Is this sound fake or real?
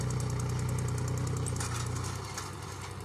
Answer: real